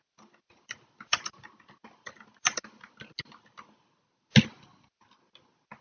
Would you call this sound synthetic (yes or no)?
no